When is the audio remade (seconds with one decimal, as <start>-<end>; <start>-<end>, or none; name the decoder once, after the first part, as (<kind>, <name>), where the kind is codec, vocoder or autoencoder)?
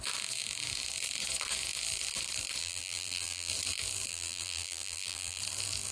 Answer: 2.6-3.5 (vocoder, BigVGAN v2); 4.1-5.4